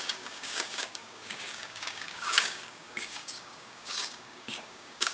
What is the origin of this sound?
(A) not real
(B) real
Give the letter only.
A